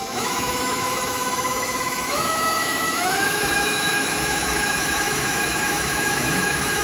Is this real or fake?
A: fake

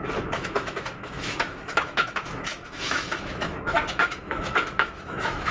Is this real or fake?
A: fake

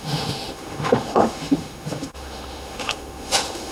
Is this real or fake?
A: fake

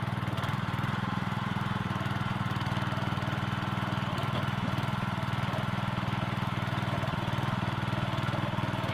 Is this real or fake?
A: real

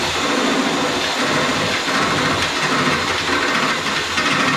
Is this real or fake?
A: real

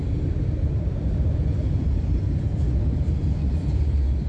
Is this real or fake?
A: real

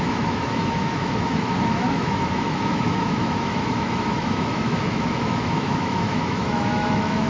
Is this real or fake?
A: fake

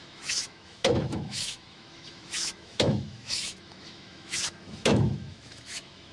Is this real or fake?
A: fake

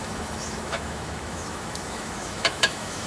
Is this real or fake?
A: fake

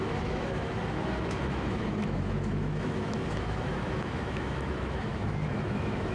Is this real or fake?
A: fake